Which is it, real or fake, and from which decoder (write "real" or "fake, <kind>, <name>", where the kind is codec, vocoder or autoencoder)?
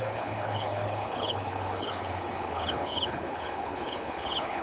fake, codec, HILCodec